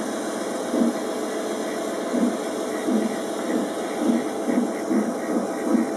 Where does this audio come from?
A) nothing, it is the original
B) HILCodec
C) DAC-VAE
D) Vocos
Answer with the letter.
A